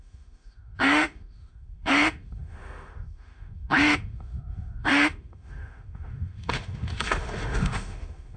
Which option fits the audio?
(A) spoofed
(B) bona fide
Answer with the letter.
A